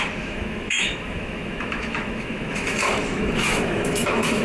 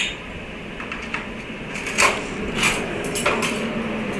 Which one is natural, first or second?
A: second